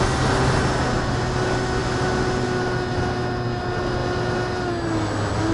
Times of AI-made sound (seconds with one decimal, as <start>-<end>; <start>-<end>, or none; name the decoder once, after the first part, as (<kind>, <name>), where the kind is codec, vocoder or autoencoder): none